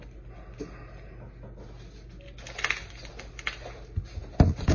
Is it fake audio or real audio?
real